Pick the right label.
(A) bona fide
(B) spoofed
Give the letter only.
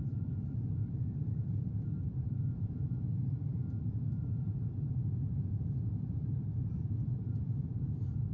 B